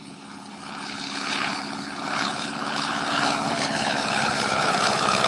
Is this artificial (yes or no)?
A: yes